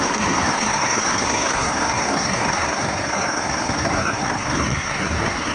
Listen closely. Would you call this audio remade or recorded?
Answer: remade